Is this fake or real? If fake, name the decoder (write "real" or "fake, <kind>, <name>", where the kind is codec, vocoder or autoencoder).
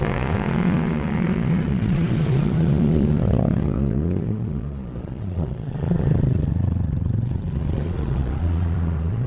fake, vocoder, Vocos